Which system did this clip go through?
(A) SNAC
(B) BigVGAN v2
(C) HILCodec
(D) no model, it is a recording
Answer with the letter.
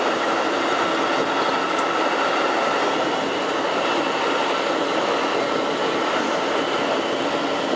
D